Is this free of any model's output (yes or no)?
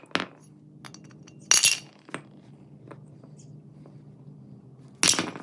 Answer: yes